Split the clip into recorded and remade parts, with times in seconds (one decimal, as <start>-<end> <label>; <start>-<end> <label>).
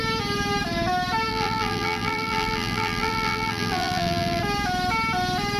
0.0-1.3 recorded; 1.3-4.4 remade; 4.4-5.6 recorded